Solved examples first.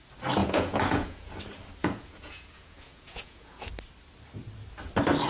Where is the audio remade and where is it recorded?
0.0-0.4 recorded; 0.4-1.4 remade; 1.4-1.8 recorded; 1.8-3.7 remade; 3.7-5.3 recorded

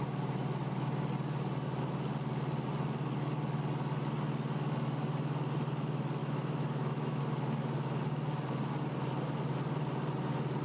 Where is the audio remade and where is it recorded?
0.0-6.2 recorded; 6.2-7.2 remade; 7.2-10.6 recorded

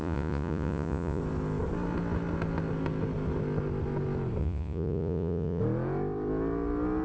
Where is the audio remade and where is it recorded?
0.0-1.2 remade; 1.2-4.4 recorded; 4.4-5.6 remade; 5.6-7.0 recorded

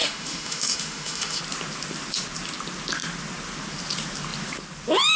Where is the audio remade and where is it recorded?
0.0-1.4 remade; 1.4-5.2 recorded

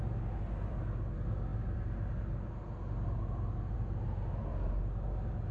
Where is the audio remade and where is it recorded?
0.0-5.5 recorded

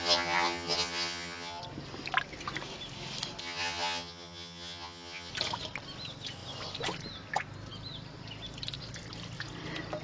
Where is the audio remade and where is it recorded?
0.0-1.6 remade; 1.6-3.4 recorded; 3.4-5.3 remade; 5.3-10.0 recorded

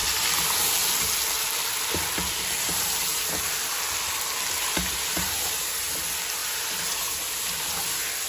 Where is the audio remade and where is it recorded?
0.0-5.1 recorded; 5.1-6.0 remade; 6.0-6.4 recorded; 6.4-7.8 remade; 7.8-8.3 recorded

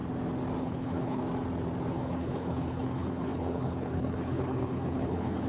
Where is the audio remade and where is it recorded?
0.0-0.6 recorded; 0.6-1.2 remade; 1.2-1.9 recorded; 1.9-5.5 remade